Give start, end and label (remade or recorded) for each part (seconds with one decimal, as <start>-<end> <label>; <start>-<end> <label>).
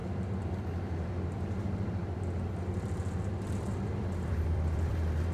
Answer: 0.0-5.3 remade